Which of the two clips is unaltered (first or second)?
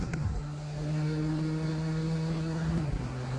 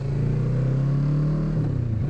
second